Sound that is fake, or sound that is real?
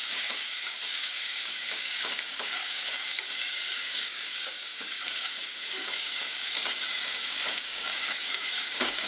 fake